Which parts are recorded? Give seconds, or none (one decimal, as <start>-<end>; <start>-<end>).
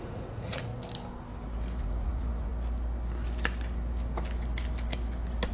0.7-1.8; 2.5-5.5